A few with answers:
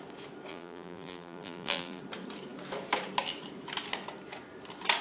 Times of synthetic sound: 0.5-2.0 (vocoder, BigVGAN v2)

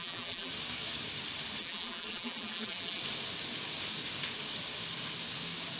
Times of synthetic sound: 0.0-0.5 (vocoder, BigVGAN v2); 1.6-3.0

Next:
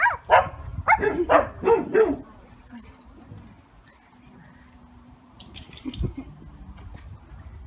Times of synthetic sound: 0.7-1.5 (vocoder, BigVGAN v2); 1.9-3.3; 4.8-7.7

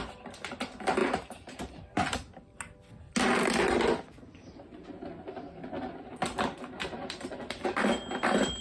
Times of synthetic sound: 1.0-1.9 (vocoder, BigVGAN v2)